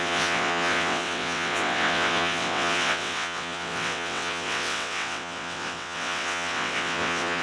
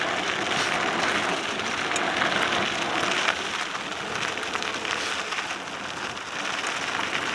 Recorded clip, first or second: second